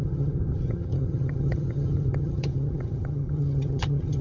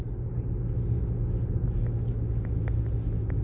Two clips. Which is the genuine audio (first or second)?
second